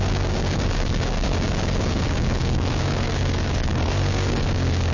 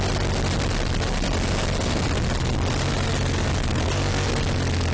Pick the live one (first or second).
second